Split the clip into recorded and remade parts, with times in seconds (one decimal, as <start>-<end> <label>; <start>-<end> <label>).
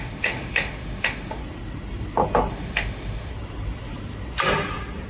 0.0-1.4 remade; 1.4-2.5 recorded; 2.5-3.3 remade; 3.3-5.1 recorded